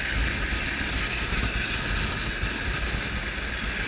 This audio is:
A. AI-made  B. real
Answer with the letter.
B